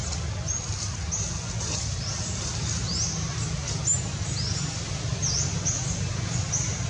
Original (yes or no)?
yes